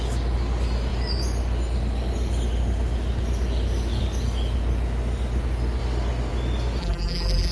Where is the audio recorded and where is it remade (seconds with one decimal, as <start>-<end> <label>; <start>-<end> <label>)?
0.0-6.8 recorded; 6.8-7.5 remade